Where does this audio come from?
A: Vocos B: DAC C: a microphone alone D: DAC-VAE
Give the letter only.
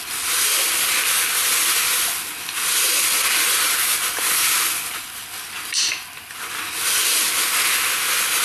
C